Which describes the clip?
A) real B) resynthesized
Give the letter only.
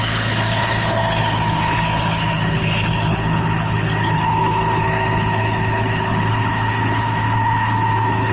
B